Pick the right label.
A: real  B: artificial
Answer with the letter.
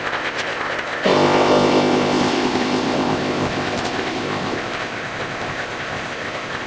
B